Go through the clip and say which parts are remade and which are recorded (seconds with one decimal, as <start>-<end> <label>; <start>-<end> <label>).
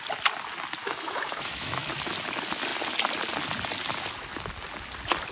0.0-0.8 recorded; 0.8-1.9 remade; 1.9-5.3 recorded